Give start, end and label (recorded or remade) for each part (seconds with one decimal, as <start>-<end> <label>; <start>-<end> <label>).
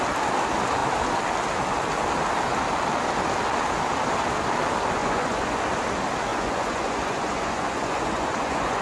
0.0-5.0 recorded; 5.0-5.6 remade; 5.6-6.3 recorded; 6.3-8.8 remade